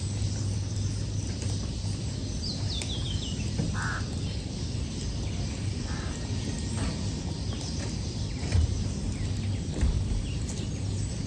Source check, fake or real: real